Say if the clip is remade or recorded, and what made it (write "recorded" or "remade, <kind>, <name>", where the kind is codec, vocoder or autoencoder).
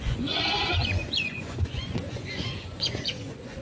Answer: remade, vocoder, Vocos